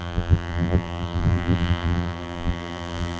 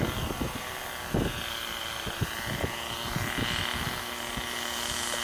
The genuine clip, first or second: second